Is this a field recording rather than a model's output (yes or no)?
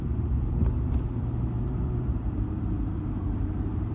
no